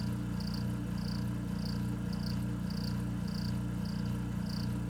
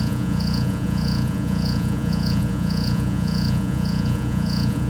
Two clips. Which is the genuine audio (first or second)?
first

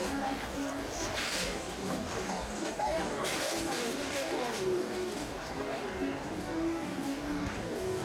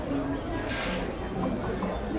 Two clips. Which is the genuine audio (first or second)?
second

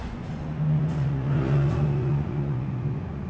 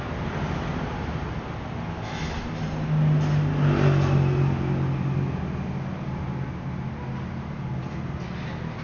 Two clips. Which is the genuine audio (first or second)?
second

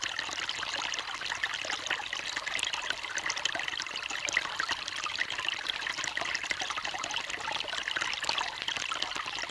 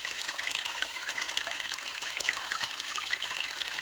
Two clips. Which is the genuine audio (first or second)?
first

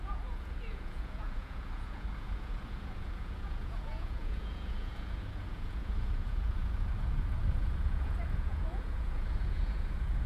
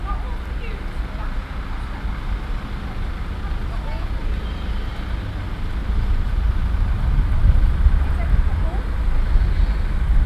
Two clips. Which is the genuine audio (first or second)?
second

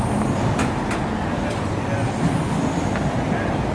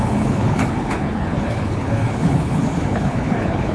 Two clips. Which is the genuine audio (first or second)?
first